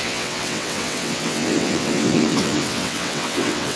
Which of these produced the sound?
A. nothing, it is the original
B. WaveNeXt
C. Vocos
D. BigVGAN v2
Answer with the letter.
B